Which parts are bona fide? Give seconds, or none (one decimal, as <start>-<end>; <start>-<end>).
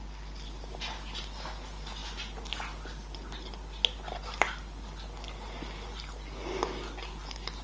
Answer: 0.0-7.6